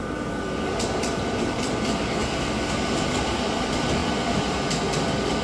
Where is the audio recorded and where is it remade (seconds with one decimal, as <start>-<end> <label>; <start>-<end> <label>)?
0.0-5.4 recorded